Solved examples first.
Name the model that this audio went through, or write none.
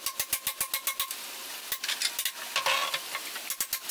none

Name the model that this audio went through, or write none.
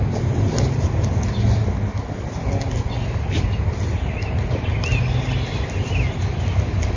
none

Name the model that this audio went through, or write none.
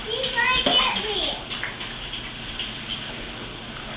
none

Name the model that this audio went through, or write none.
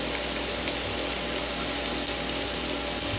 none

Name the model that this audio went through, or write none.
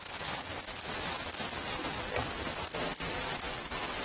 none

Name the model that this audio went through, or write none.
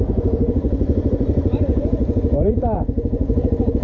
vocoder, Vocos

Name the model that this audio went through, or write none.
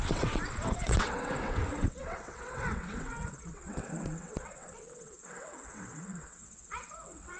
vocoder, WaveNeXt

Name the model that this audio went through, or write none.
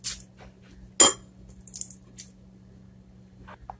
none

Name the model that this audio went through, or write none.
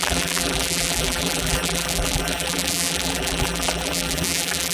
vocoder, BigVGAN v2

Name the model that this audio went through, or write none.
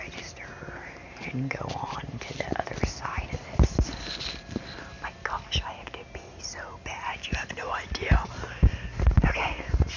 none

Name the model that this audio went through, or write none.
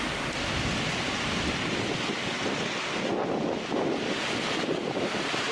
none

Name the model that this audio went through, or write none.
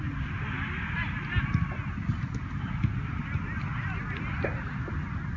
none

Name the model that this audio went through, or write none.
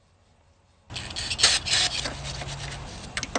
none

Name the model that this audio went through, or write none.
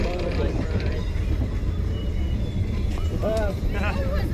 none